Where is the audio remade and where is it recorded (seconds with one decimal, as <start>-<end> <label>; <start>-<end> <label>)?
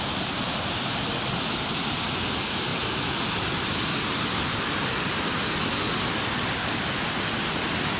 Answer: 0.0-8.0 recorded